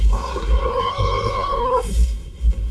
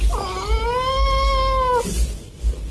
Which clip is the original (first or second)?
second